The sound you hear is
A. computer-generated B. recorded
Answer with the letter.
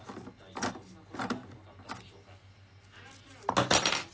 B